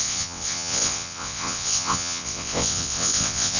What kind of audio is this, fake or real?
fake